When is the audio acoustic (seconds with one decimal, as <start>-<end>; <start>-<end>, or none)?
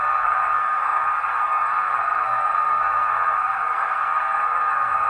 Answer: none